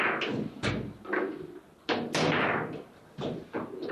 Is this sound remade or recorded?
recorded